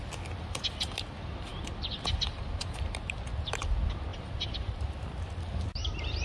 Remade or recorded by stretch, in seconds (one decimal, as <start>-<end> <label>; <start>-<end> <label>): 0.0-4.1 recorded; 4.1-5.0 remade; 5.0-6.2 recorded